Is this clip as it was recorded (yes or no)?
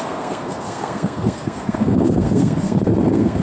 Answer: no